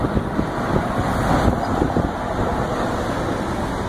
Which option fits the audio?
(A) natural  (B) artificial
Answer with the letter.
A